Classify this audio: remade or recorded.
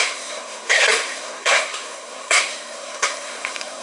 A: remade